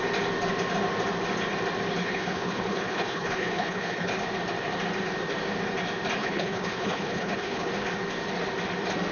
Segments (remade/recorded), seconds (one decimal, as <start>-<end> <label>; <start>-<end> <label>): 0.0-2.0 recorded; 2.0-4.1 remade; 4.1-6.2 recorded; 6.2-7.7 remade; 7.7-9.1 recorded